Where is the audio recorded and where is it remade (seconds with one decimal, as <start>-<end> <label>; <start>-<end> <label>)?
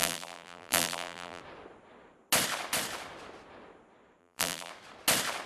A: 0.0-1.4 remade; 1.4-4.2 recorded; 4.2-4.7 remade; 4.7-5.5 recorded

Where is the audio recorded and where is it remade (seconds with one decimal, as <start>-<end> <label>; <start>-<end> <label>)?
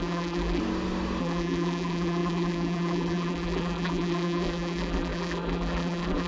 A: 0.0-0.6 remade; 0.6-1.2 recorded; 1.2-6.3 remade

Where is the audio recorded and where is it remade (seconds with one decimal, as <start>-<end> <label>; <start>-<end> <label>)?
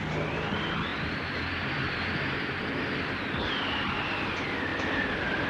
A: 0.0-0.9 recorded; 0.9-2.6 remade; 2.6-4.7 recorded; 4.7-5.5 remade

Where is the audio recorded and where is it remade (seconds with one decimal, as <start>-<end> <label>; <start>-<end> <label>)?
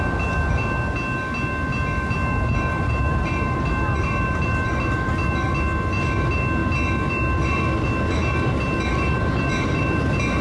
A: 0.0-2.7 recorded; 2.7-5.5 remade; 5.5-10.4 recorded